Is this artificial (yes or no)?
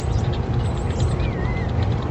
no